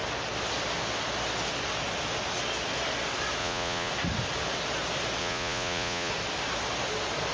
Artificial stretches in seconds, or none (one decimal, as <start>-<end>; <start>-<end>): 3.4-3.9; 5.2-6.1